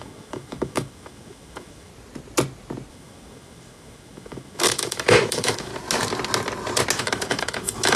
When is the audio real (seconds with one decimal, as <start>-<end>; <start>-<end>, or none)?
1.9-2.9; 5.7-7.0